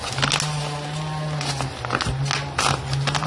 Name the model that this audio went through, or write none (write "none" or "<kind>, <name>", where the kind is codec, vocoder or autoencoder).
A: none